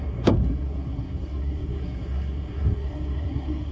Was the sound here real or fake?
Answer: fake